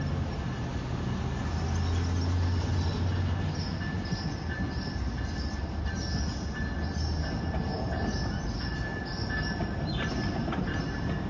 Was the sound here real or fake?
real